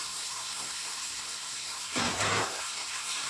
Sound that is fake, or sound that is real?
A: fake